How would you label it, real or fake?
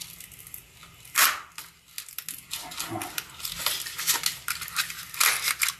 real